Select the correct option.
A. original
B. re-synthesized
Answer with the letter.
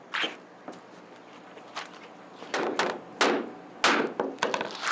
A